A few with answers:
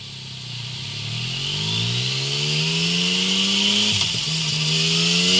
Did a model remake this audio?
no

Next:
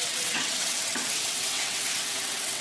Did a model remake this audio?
yes